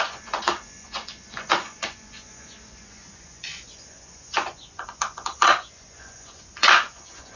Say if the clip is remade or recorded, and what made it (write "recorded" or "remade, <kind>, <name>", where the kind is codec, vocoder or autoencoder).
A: remade, vocoder, Vocos